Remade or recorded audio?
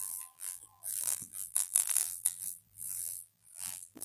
remade